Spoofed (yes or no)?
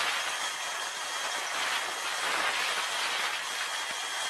no